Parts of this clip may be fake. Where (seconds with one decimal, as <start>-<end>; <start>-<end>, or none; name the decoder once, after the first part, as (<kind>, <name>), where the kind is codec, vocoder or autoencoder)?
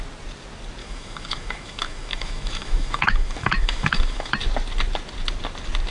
0.8-4.3 (autoencoder, DAC-VAE)